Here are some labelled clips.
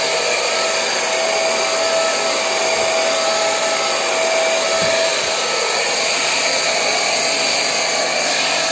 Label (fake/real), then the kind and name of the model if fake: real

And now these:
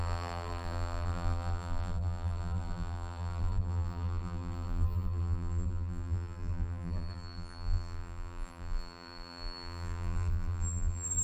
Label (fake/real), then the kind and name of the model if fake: fake, vocoder, BigVGAN v2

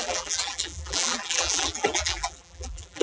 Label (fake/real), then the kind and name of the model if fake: fake, vocoder, BigVGAN v2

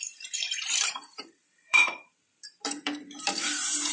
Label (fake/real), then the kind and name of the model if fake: fake, vocoder, BigVGAN v2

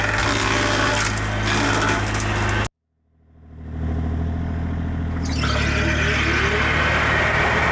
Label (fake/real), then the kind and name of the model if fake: real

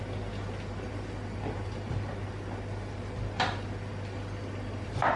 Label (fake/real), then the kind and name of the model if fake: real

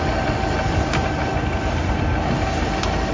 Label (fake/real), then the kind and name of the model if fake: real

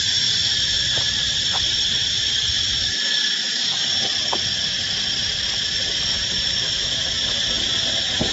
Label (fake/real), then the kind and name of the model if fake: real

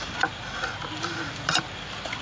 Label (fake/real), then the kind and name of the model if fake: fake, vocoder, BigVGAN v2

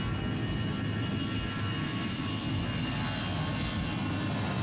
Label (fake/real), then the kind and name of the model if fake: real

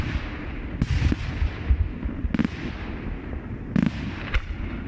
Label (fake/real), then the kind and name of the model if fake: real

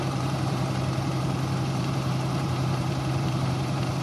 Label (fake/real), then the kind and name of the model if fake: fake, vocoder, BigVGAN v2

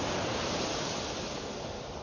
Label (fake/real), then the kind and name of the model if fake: fake, vocoder, BigVGAN v2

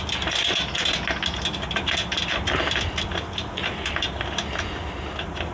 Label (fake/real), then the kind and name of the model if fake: real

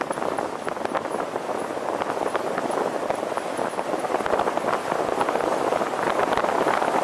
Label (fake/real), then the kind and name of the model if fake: real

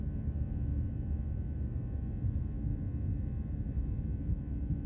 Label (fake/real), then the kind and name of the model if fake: real